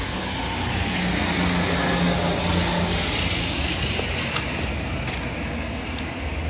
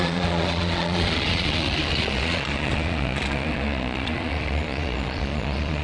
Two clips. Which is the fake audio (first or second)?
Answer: second